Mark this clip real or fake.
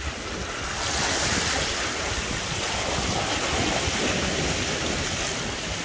real